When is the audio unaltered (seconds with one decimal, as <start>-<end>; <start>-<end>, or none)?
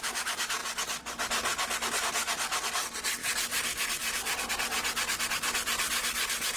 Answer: 0.0-3.2; 4.5-6.6